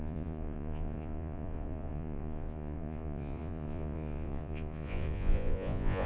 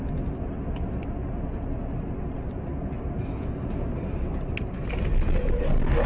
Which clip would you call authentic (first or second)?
second